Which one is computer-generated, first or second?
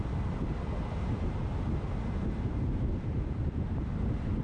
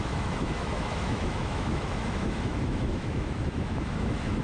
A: second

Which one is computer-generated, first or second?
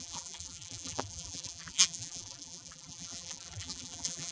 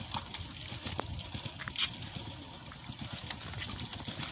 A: first